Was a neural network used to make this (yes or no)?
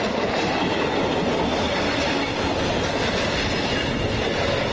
no